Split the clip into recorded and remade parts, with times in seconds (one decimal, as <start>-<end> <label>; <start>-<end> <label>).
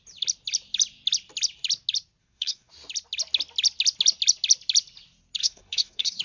0.0-2.2 recorded; 2.2-2.7 remade; 2.7-5.4 recorded; 5.4-6.2 remade